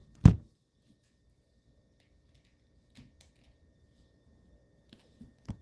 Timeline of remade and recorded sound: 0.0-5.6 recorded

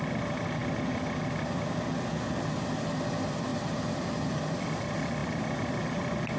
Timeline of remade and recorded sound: 0.0-3.5 recorded; 3.5-4.6 remade; 4.6-6.4 recorded